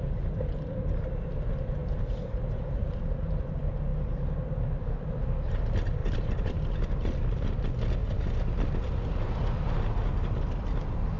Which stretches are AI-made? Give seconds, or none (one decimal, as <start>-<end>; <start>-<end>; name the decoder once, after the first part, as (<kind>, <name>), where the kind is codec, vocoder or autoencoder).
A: 1.8-3.2 (vocoder, BigVGAN v2); 6.0-6.6